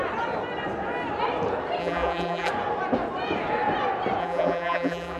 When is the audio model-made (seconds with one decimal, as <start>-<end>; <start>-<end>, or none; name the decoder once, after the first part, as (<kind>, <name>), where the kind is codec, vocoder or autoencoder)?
1.8-2.5 (vocoder, BigVGAN v2); 4.2-5.2